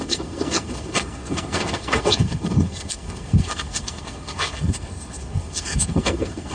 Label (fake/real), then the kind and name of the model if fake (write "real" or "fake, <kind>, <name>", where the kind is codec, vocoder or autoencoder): fake, codec, SNAC